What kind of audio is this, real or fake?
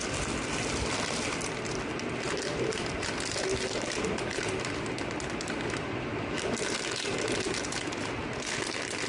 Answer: real